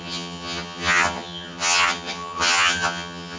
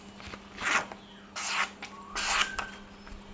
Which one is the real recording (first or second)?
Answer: second